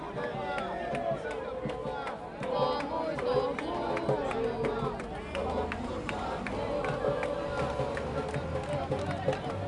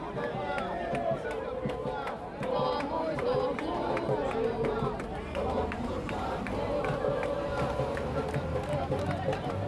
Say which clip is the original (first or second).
first